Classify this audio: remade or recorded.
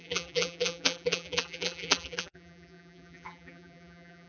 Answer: remade